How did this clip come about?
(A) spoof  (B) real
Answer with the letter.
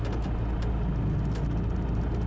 B